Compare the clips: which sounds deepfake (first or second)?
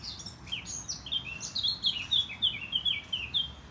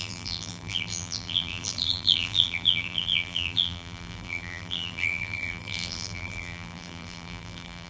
second